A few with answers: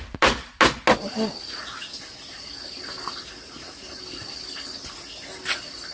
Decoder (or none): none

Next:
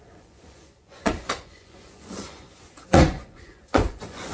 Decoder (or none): vocoder, Vocos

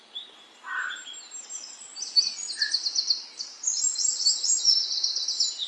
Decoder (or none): none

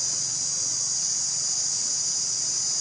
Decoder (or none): none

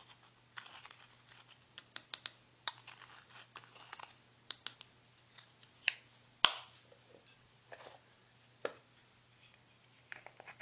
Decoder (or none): none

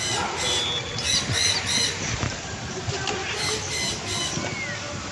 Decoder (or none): none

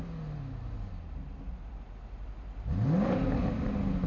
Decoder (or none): none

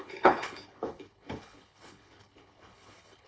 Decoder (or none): codec, HILCodec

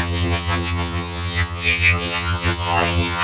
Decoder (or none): vocoder, HiFi-GAN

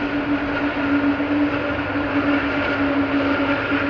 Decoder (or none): none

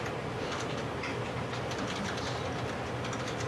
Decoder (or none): none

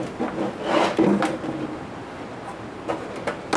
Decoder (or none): none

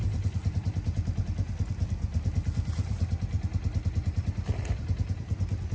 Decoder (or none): none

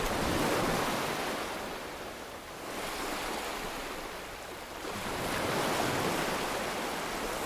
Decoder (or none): none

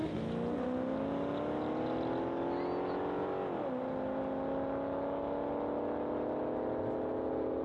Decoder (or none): none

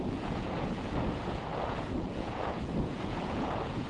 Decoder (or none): vocoder, Vocos